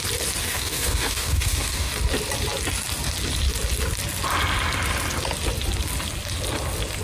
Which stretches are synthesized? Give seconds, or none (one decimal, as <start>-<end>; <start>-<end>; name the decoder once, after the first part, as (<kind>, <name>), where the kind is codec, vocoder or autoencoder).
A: 0.4-1.9 (codec, DAC)